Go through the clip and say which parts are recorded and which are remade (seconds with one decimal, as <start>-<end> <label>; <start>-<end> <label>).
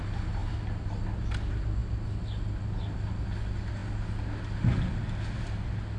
0.0-0.4 recorded; 0.4-0.9 remade; 0.9-6.0 recorded